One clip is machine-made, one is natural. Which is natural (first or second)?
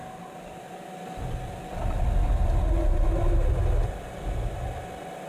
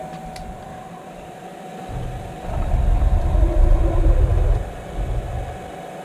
first